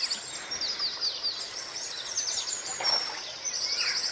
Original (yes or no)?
yes